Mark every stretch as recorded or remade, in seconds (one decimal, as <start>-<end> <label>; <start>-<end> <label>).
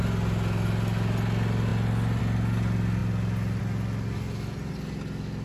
0.0-5.4 recorded